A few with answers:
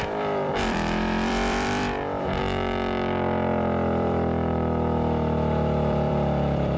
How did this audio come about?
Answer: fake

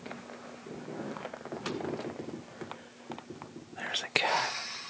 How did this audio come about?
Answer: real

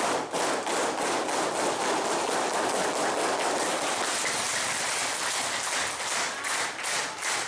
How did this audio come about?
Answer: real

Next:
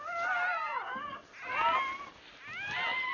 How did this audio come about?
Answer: real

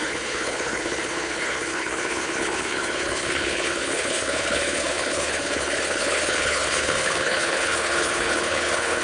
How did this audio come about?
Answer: fake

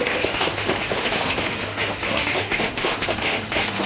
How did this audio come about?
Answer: fake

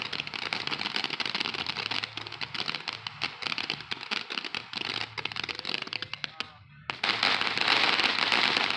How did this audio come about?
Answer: real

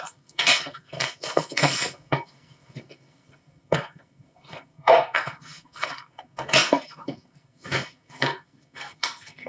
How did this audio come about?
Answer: fake